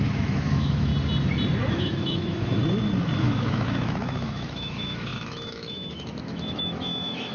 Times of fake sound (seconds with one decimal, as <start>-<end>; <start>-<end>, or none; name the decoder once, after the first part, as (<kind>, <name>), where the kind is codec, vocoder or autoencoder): 0.0-0.9 (autoencoder, DAC-VAE); 1.7-2.6; 3.2-7.3